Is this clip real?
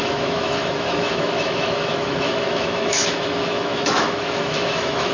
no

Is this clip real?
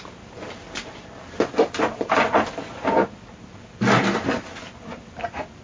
yes